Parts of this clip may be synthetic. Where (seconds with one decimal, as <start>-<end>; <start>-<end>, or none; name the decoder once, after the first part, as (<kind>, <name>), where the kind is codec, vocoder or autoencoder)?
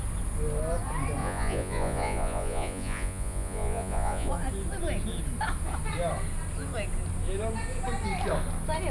1.2-4.3 (vocoder, Vocos)